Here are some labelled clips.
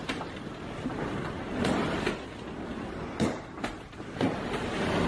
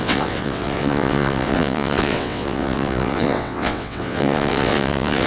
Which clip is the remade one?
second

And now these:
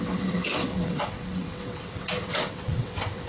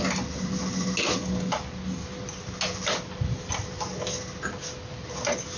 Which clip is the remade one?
first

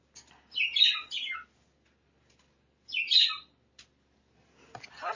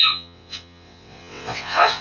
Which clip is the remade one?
second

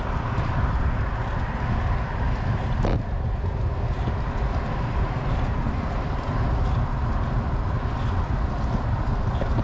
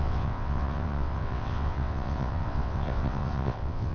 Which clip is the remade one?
second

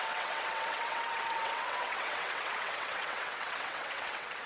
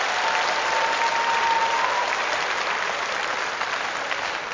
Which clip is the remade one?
first